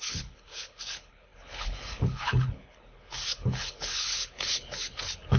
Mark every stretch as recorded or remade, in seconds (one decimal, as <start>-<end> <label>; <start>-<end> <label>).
0.0-5.4 remade